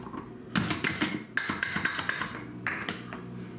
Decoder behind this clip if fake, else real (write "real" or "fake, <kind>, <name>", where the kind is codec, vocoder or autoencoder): real